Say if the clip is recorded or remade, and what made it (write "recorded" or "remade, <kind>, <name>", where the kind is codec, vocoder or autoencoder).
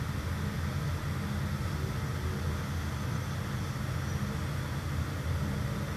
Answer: recorded